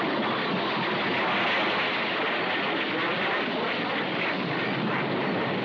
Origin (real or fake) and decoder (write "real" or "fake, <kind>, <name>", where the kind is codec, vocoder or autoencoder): real